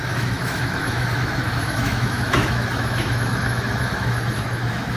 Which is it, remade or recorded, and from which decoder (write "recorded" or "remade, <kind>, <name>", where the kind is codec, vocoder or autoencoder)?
remade, autoencoder, DAC-VAE